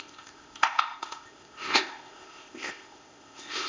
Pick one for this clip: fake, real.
fake